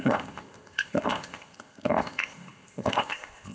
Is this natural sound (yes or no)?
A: no